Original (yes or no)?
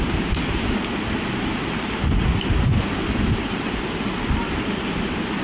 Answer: yes